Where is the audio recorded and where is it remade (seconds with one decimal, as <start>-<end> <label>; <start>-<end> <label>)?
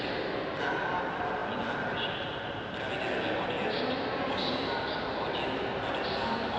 0.0-6.6 recorded